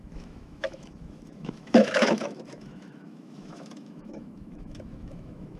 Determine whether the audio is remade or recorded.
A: remade